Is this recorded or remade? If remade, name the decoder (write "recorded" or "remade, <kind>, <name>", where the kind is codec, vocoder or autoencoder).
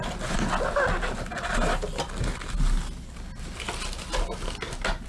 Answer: recorded